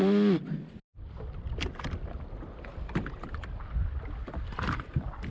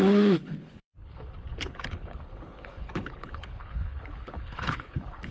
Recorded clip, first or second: first